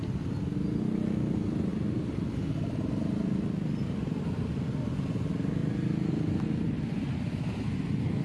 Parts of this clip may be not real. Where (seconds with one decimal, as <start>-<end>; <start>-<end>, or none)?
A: none